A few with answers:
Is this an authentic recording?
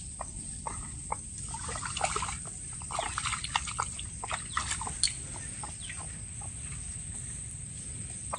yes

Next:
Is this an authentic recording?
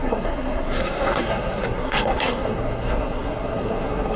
no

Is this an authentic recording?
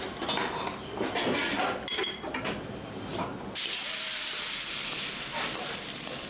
yes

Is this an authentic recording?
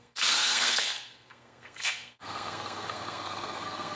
no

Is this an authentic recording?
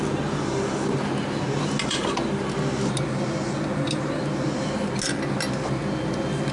yes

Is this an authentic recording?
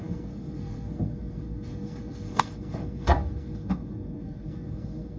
no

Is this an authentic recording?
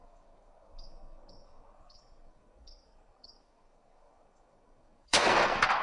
no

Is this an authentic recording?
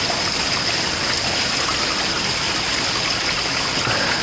yes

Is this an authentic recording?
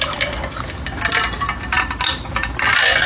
yes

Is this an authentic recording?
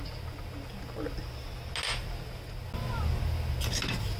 yes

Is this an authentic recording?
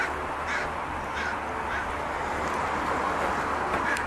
yes